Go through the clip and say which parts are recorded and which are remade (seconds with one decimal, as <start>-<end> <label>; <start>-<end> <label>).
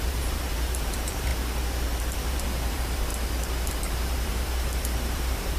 0.0-1.3 remade; 1.3-2.0 recorded; 2.0-3.1 remade; 3.1-3.7 recorded; 3.7-5.6 remade